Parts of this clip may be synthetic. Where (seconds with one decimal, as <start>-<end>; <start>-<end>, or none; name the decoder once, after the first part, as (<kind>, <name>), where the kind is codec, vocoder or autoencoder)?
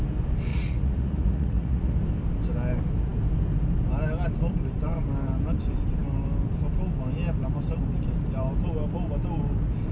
0.5-1.9 (vocoder, Vocos)